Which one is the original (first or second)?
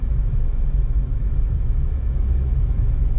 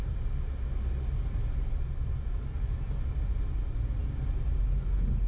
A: second